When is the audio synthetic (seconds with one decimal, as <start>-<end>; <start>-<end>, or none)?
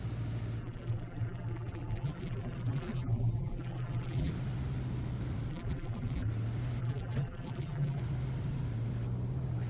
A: 0.6-4.3; 5.5-6.3; 6.8-8.0